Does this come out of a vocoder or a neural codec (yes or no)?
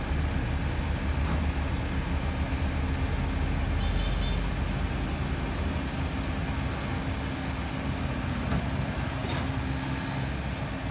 no